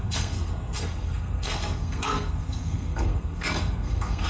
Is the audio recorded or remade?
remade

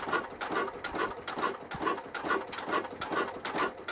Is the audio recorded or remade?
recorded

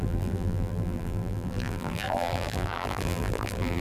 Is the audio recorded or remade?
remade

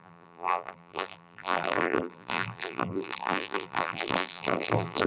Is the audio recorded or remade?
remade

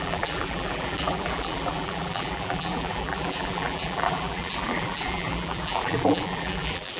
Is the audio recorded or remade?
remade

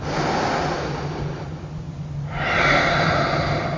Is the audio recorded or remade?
recorded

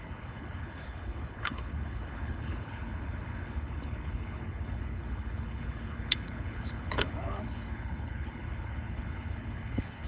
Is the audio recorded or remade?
remade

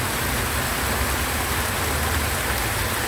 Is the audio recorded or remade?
recorded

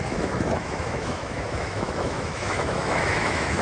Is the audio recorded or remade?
remade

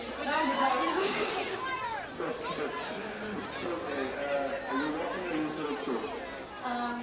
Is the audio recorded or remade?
recorded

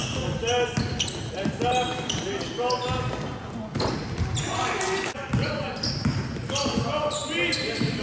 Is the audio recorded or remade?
recorded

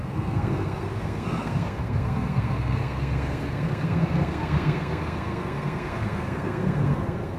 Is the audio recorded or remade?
remade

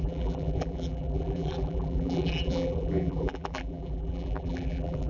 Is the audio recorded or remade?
remade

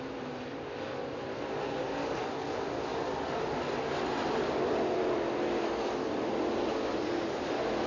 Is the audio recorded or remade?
recorded